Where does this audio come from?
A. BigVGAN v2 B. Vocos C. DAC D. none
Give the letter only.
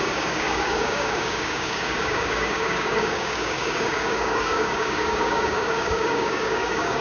C